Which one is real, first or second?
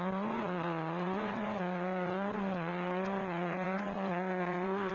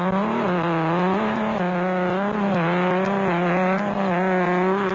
second